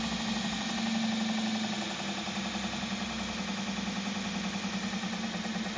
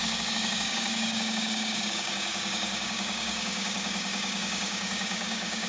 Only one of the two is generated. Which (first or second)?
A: second